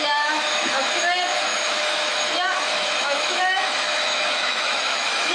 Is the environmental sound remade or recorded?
remade